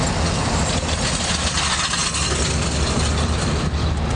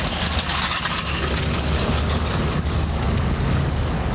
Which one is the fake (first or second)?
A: second